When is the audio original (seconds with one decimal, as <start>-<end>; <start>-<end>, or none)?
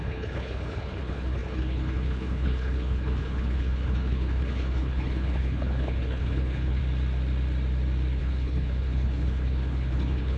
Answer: 6.8-8.2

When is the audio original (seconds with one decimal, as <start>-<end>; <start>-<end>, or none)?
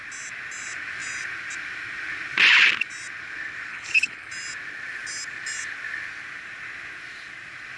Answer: 0.0-3.7; 4.3-7.8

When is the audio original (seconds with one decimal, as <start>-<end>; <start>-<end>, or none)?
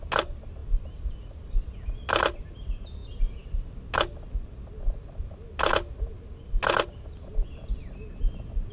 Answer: 0.0-8.7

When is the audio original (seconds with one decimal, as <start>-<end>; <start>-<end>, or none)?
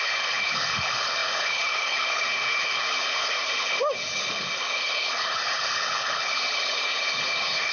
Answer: none